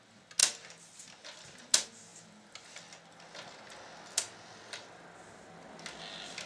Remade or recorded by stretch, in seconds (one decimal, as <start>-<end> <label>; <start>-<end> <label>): 0.0-6.5 recorded